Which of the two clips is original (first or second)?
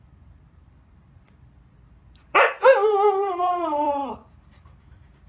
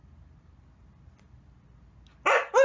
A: second